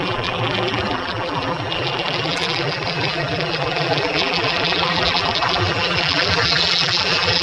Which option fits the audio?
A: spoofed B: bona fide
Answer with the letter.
A